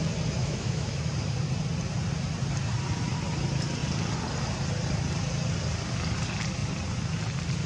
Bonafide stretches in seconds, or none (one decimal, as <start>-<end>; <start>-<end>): 0.0-0.4; 1.1-7.7